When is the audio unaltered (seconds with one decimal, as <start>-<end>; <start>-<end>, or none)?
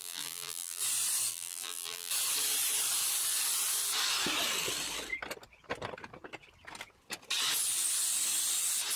0.8-1.3; 2.1-9.0